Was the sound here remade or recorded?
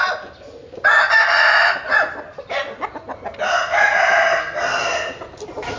recorded